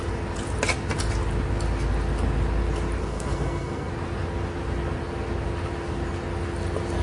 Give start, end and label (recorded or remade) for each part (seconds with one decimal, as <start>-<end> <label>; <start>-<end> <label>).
0.0-3.0 recorded; 3.0-3.9 remade; 3.9-7.0 recorded

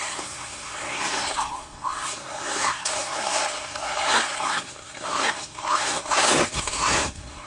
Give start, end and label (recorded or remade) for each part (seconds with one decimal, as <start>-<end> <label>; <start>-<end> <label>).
0.0-7.5 remade

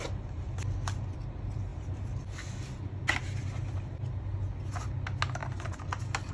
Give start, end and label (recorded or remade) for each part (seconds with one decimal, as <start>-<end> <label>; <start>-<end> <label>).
0.0-6.3 recorded